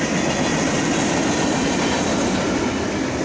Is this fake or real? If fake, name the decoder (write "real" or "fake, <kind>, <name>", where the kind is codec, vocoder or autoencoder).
real